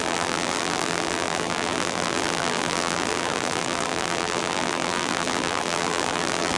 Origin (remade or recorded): remade